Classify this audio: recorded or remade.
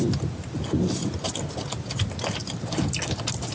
recorded